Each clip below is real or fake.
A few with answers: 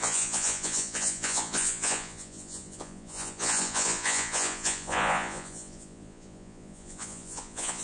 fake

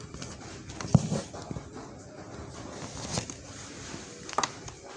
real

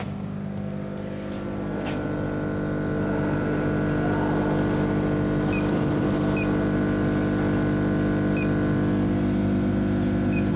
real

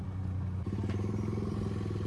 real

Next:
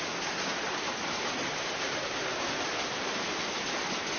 real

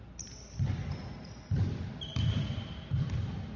real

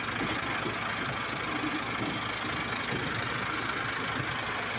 real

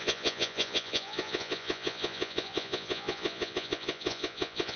fake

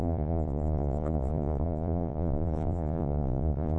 fake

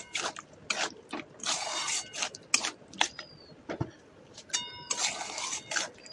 real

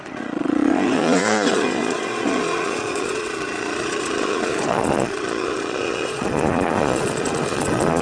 fake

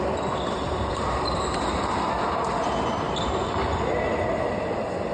real